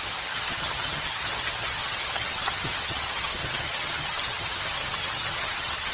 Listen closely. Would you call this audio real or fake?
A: fake